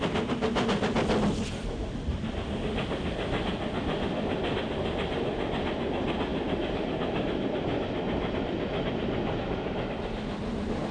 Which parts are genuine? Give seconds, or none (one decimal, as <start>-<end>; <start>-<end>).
0.0-10.9